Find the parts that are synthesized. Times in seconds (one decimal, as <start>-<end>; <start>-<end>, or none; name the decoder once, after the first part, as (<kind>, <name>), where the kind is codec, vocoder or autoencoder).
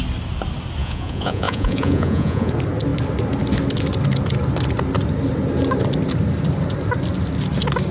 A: 0.8-2.5 (vocoder, Vocos)